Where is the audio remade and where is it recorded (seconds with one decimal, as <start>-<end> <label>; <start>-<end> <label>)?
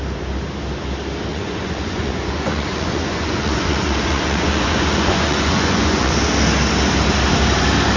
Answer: 0.0-1.3 recorded; 1.3-6.1 remade; 6.1-8.0 recorded